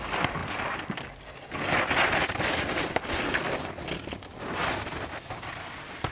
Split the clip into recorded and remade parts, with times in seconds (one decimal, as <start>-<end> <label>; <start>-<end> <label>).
0.0-6.1 recorded